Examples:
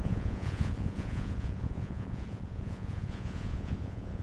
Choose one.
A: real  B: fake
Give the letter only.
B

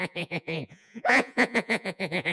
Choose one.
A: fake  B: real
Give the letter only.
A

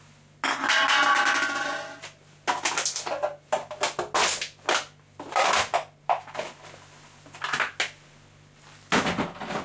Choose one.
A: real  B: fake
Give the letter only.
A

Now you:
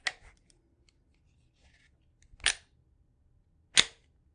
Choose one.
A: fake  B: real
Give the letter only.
B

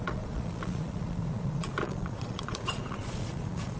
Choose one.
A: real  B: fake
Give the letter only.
B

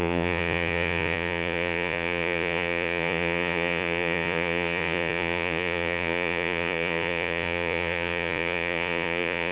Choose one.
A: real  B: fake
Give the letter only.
B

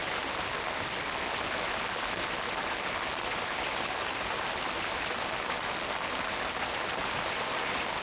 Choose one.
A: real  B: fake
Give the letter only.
A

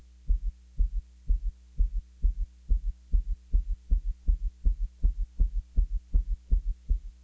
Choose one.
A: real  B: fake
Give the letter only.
A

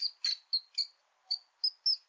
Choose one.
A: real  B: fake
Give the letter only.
A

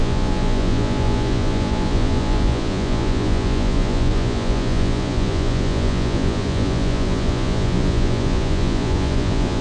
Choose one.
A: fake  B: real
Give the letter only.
A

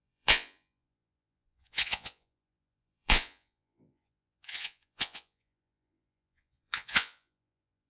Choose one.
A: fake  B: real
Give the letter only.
A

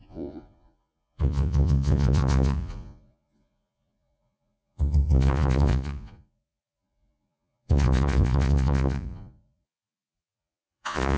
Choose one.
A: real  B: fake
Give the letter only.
B